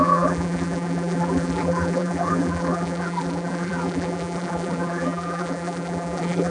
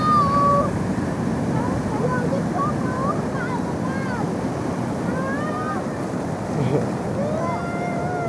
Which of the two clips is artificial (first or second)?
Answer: first